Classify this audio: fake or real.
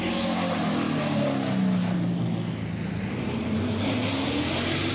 real